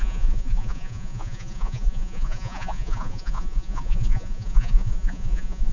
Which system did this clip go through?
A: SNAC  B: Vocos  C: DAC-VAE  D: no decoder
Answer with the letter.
B